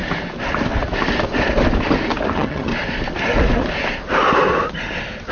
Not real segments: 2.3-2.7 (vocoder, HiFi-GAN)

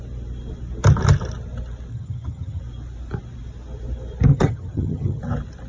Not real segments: 1.9-2.6 (vocoder, HiFi-GAN); 4.3-5.2

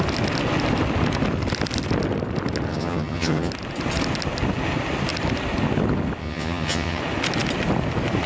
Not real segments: 2.7-3.5 (vocoder, HiFi-GAN); 6.2-7.0

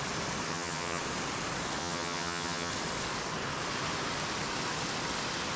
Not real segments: 0.5-1.0 (vocoder, HiFi-GAN); 1.8-2.7

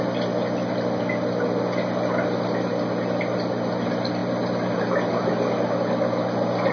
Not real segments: none

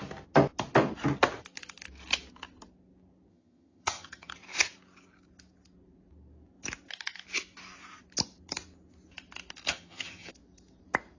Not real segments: 3.3-4.3 (vocoder, HiFi-GAN); 9.7-10.3

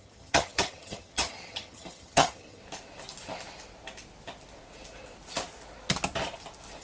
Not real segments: 0.0-2.6 (vocoder, HiFi-GAN)

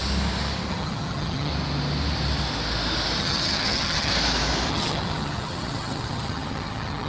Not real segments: 0.7-1.5 (vocoder, HiFi-GAN); 3.2-4.1; 4.7-7.1